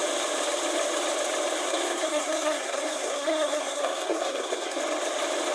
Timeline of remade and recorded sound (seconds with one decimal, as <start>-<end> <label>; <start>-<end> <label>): 0.0-1.6 recorded; 1.6-4.8 remade; 4.8-5.5 recorded